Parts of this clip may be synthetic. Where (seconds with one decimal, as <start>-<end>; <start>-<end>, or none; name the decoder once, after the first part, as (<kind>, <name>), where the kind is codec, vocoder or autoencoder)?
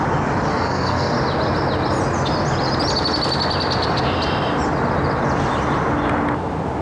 0.5-1.1 (codec, SNAC)